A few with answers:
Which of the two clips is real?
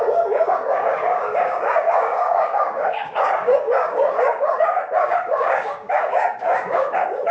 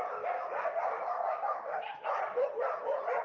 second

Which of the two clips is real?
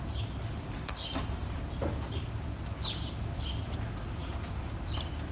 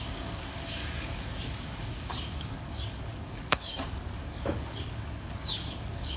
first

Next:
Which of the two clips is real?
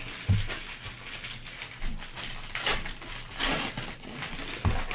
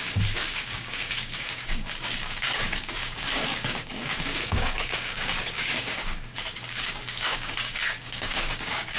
first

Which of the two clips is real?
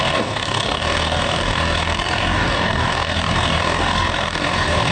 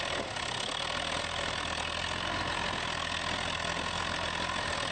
second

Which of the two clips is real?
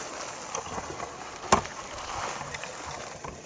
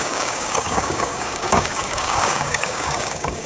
first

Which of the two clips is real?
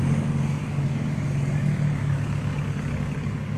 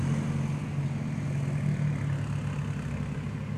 second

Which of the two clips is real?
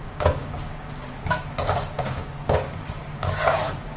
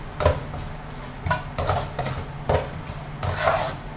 second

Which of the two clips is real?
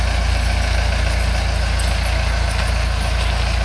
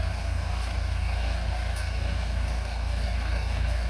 first